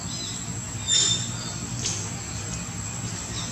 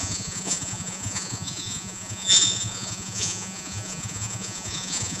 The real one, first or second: first